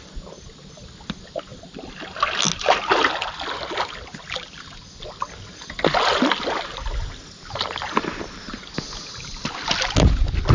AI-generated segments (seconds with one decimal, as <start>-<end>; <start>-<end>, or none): none